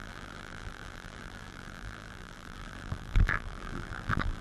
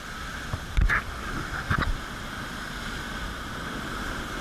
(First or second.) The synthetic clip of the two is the first